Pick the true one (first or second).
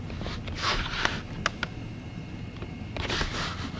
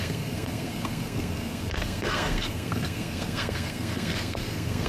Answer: first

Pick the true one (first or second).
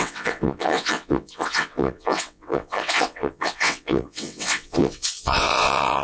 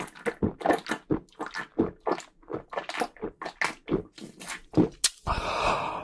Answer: second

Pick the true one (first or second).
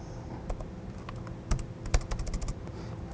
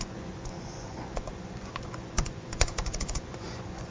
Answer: first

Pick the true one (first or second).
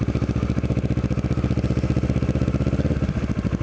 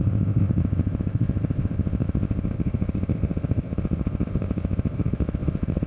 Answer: first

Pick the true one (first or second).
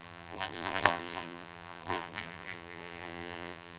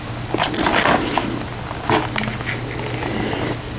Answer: second